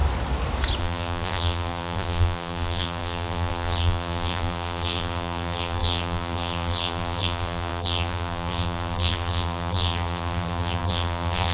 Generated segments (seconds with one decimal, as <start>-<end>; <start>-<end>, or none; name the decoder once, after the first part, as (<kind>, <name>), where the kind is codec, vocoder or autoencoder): 0.8-11.5 (vocoder, BigVGAN v2)